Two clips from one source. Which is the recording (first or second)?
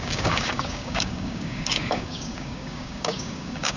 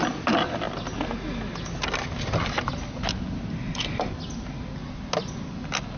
second